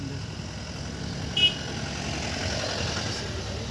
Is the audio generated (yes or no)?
no